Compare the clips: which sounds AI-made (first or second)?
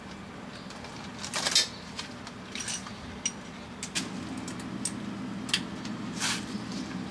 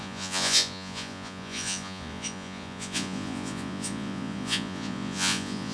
second